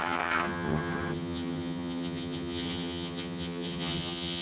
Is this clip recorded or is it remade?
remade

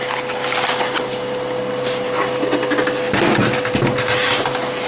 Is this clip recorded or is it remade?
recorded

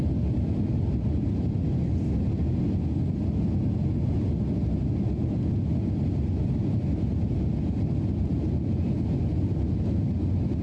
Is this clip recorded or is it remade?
recorded